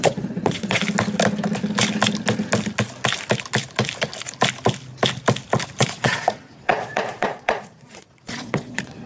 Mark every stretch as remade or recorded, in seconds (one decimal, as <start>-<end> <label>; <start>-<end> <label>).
0.0-0.8 remade; 0.8-5.8 recorded; 5.8-9.1 remade

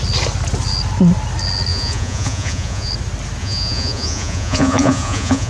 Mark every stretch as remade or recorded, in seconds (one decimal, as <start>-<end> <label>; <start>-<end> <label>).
0.0-1.7 recorded; 1.7-2.9 remade; 2.9-3.4 recorded; 3.4-5.5 remade

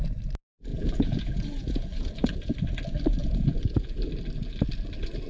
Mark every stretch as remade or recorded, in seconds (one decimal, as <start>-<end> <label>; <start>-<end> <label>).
0.0-0.7 recorded; 0.7-2.5 remade; 2.5-3.2 recorded; 3.2-4.0 remade; 4.0-5.3 recorded

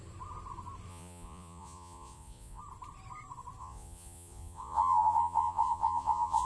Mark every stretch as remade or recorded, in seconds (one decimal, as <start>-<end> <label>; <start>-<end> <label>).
0.0-0.9 recorded; 0.9-2.6 remade; 2.6-3.6 recorded; 3.6-6.5 remade

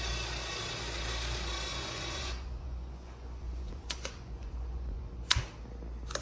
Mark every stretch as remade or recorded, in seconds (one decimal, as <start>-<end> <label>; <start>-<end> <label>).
0.0-1.7 recorded; 1.7-5.4 remade; 5.4-6.2 recorded

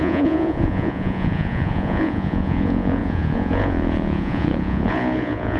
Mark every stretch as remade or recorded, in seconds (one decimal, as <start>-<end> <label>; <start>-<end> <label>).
0.0-5.6 remade